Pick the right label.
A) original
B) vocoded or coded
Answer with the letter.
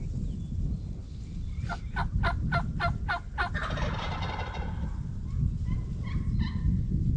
A